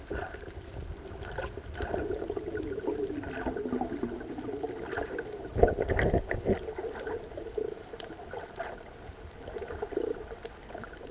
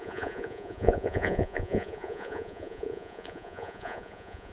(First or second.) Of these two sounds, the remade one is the second